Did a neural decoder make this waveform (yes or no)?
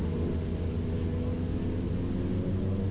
no